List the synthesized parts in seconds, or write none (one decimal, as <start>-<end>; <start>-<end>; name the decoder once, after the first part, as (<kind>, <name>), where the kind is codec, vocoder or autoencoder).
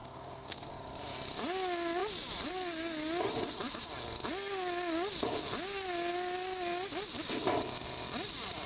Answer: 0.0-0.7 (codec, SNAC)